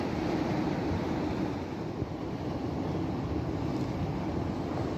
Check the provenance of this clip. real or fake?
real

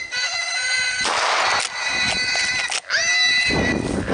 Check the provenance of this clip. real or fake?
real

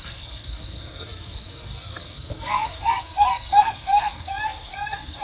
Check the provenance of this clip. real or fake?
fake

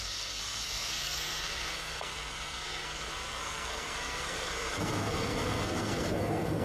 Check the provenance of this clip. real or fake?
fake